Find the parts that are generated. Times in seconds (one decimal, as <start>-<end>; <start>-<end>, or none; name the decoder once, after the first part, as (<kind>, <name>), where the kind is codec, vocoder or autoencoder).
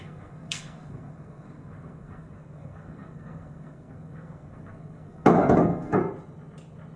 0.0-6.0 (codec, SNAC)